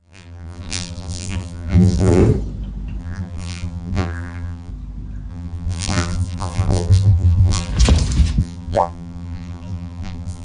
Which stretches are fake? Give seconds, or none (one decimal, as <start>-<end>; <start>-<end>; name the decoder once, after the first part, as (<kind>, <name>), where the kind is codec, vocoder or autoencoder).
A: 0.0-2.2 (vocoder, BigVGAN v2); 3.0-4.7; 5.3-7.7; 8.4-10.4